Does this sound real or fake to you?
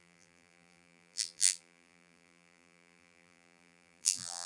fake